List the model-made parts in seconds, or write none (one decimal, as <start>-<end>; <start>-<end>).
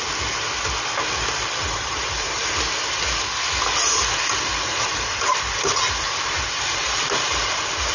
1.6-2.5; 4.5-7.0